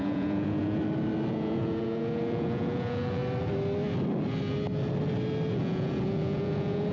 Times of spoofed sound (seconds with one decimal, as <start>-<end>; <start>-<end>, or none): 0.0-0.8; 1.3-3.2; 5.6-6.9